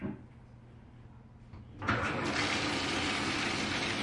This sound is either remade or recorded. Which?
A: recorded